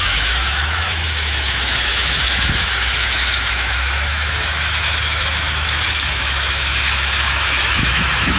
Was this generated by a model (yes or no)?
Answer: yes